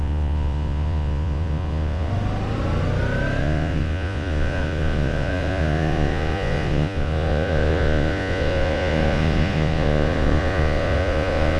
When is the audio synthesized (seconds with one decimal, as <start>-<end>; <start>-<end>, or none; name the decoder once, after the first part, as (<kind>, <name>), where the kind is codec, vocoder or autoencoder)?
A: 0.0-2.1 (vocoder, Vocos); 3.4-11.6